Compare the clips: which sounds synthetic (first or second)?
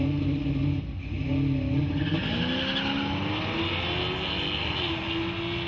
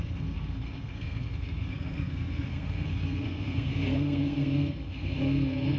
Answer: second